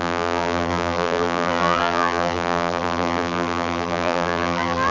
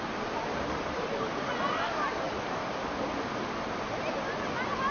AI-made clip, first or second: first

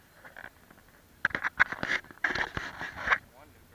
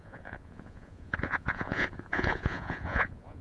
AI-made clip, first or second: second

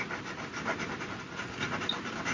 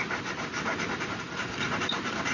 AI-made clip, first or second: second